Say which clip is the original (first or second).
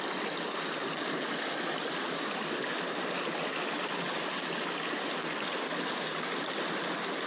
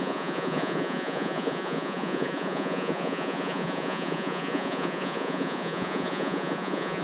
first